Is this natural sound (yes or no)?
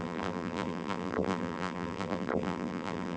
no